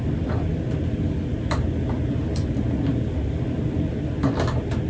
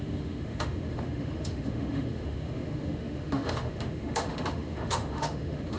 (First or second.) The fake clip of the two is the second